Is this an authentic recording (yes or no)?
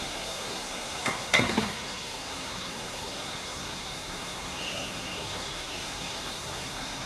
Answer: no